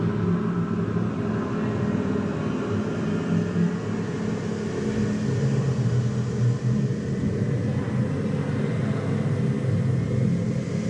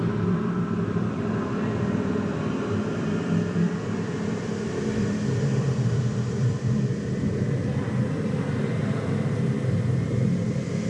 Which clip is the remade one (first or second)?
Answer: second